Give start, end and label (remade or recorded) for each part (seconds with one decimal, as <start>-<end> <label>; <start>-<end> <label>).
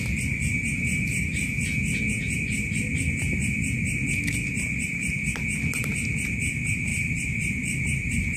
0.0-6.9 recorded; 6.9-7.8 remade; 7.8-8.4 recorded